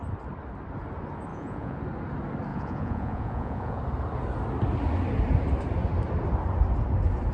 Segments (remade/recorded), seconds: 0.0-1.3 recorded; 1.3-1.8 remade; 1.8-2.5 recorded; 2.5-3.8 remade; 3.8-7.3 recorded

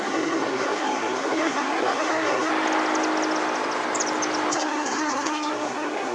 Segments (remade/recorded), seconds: 0.0-2.5 remade; 2.5-4.5 recorded; 4.5-6.1 remade

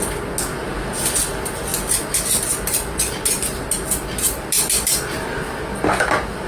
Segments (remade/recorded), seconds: 0.0-6.5 recorded

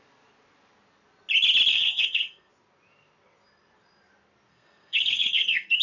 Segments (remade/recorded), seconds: 0.0-1.7 recorded; 1.7-2.5 remade; 2.5-4.5 recorded; 4.5-5.8 remade

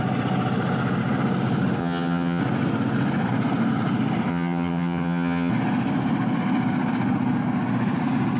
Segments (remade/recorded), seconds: 0.0-1.8 recorded; 1.8-2.4 remade; 2.4-4.3 recorded; 4.3-5.5 remade; 5.5-8.4 recorded

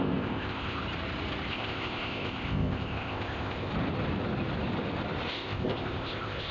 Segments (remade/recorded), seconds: 0.0-0.8 remade; 0.8-1.5 recorded; 1.5-3.7 remade; 3.7-5.3 recorded; 5.3-6.5 remade

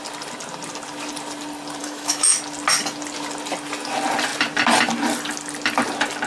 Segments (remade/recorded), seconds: 0.0-1.8 recorded; 1.8-2.4 remade; 2.4-6.3 recorded